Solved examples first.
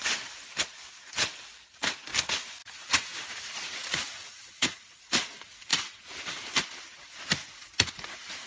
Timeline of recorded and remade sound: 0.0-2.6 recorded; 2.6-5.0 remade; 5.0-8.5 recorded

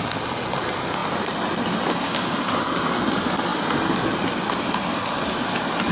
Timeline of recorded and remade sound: 0.0-5.9 recorded

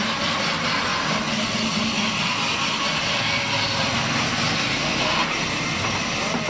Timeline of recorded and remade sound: 0.0-6.5 recorded

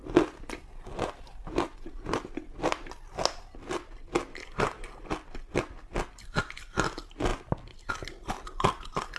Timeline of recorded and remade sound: 0.0-9.2 recorded

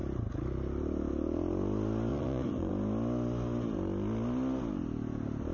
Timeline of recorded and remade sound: 0.0-2.1 recorded; 2.1-2.7 remade; 2.7-5.5 recorded